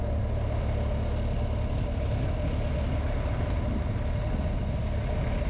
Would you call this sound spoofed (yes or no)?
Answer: no